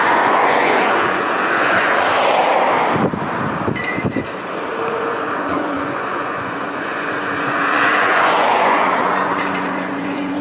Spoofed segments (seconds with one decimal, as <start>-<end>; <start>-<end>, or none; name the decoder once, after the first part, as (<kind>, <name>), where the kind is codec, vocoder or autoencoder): 0.0-2.1 (vocoder, Vocos); 4.9-10.4